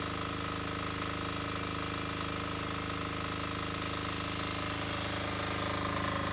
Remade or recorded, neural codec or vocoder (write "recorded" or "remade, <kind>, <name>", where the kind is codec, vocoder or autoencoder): recorded